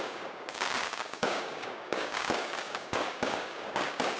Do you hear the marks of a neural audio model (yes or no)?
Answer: yes